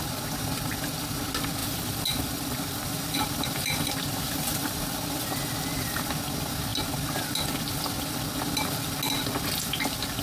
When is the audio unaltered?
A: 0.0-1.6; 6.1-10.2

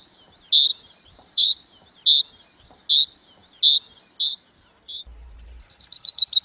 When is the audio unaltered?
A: 0.0-0.7; 1.7-5.1

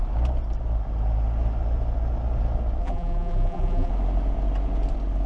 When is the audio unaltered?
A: 0.0-2.8; 3.9-5.3